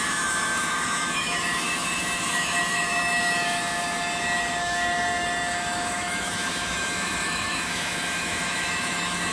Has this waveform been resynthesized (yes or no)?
yes